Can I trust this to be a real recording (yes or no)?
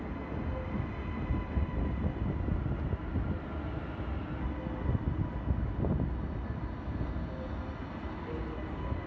yes